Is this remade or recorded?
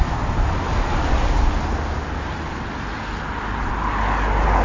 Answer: recorded